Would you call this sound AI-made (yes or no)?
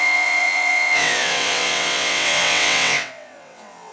yes